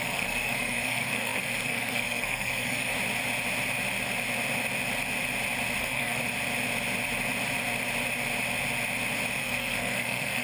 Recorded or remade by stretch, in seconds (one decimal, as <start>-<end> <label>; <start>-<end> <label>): 0.0-2.9 remade; 2.9-5.8 recorded; 5.8-6.2 remade; 6.2-9.4 recorded; 9.4-10.4 remade